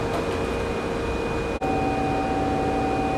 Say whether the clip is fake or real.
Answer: real